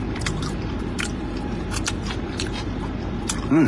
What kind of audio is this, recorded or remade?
remade